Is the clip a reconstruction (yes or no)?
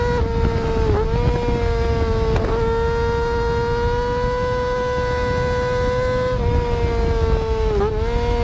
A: no